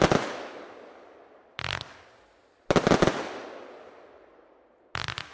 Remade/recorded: recorded